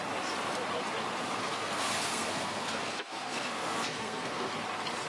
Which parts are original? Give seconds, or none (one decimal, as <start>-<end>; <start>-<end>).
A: 0.0-1.4; 4.5-5.1